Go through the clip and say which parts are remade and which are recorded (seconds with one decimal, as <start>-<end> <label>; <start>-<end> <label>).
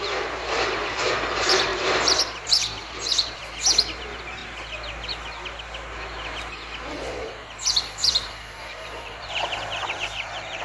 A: 0.0-3.4 remade; 3.4-4.0 recorded; 4.0-4.4 remade; 4.4-6.9 recorded; 6.9-10.6 remade